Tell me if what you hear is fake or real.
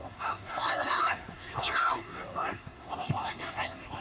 fake